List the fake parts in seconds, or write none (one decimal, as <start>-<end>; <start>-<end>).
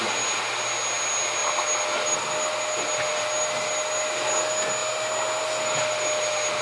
none